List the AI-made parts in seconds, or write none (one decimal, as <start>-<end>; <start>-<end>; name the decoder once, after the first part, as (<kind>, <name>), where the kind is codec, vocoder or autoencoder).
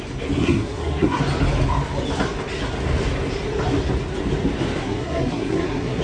0.4-1.2 (codec, SNAC); 4.8-6.0